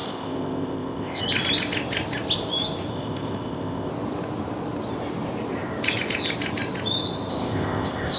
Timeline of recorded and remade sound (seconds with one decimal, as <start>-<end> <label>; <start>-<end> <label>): 0.0-1.2 remade; 1.2-2.9 recorded; 2.9-3.9 remade; 3.9-7.3 recorded; 7.3-8.2 remade

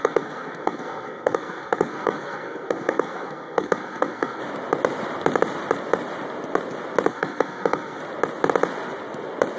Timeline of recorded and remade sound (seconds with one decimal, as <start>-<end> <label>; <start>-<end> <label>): 0.0-4.4 remade; 4.4-7.1 recorded; 7.1-8.0 remade; 8.0-9.6 recorded